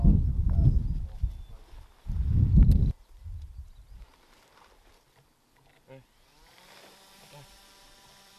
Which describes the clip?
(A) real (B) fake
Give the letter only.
B